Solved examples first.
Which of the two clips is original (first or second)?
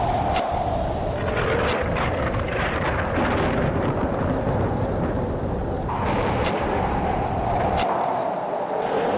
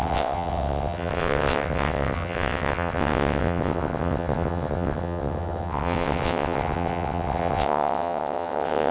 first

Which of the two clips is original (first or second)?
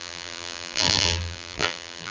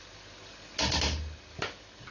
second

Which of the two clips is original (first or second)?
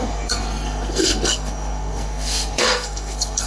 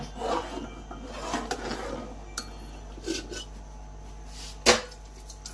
second